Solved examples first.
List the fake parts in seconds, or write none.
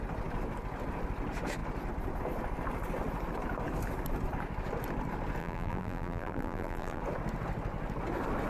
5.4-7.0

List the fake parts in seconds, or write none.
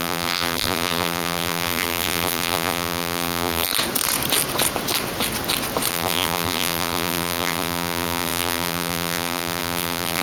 0.0-3.7; 5.9-10.2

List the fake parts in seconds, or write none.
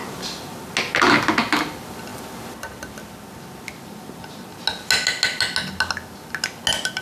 none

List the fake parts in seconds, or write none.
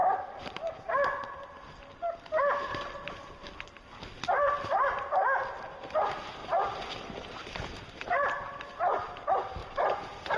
0.0-0.8; 6.4-7.0; 9.6-10.4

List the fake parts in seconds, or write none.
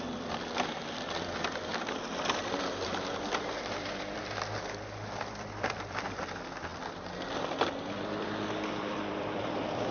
0.0-6.7; 7.4-9.9